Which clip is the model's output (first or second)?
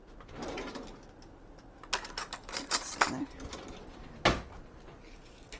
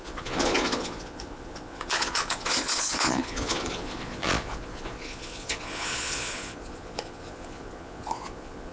second